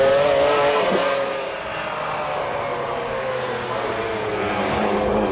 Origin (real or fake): real